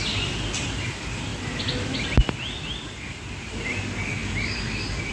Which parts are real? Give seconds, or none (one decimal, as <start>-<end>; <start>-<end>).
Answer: 0.0-5.1